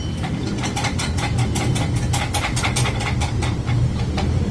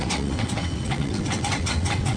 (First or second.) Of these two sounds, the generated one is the second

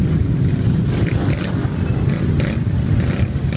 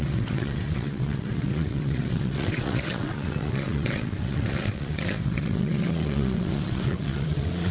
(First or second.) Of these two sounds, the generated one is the second